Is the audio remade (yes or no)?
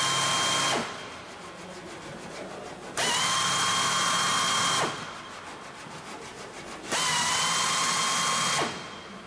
no